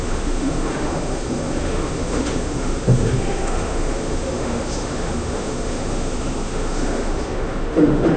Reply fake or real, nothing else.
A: fake